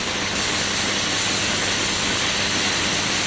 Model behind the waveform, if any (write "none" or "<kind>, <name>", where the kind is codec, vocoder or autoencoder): none